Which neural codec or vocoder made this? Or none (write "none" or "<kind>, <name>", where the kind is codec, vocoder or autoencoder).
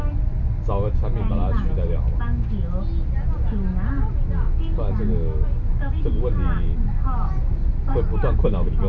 none